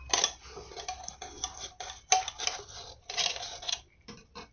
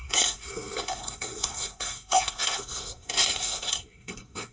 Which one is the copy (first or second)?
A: second